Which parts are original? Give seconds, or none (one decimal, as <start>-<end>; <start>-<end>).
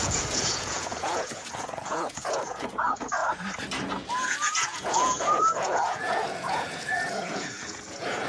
3.2-4.1